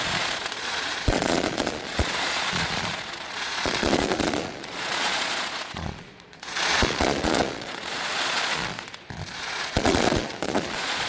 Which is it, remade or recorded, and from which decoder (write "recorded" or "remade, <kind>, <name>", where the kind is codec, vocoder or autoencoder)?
remade, vocoder, Vocos